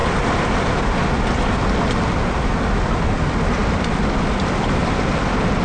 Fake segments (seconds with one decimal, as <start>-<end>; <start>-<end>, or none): none